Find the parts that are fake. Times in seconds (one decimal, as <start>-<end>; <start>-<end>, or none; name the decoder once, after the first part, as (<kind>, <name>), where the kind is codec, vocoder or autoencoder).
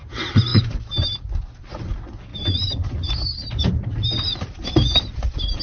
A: 2.3-3.7 (vocoder, BigVGAN v2)